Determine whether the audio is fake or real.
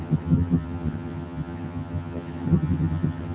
fake